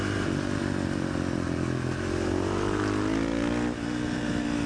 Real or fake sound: real